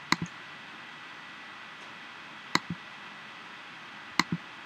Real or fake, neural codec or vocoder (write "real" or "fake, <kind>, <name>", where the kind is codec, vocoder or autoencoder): real